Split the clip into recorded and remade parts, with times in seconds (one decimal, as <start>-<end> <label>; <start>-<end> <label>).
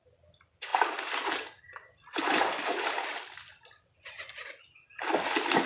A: 0.0-5.7 recorded